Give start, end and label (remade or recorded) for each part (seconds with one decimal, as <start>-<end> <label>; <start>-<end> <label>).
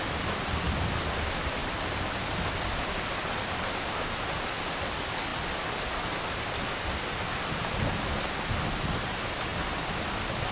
0.0-10.5 recorded